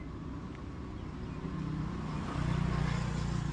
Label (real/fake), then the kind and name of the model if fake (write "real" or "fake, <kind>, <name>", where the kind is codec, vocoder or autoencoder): real